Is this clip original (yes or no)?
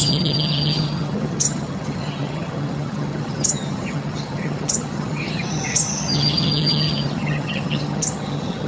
no